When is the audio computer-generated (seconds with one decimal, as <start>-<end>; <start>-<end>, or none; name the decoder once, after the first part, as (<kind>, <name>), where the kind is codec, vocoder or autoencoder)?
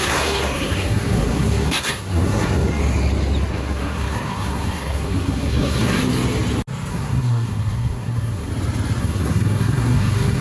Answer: 0.0-2.8 (codec, SNAC); 3.5-6.0; 6.9-8.5; 9.0-10.4